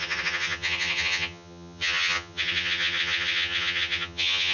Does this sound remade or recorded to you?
remade